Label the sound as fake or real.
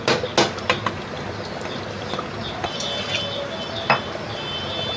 real